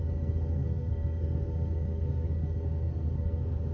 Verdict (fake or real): fake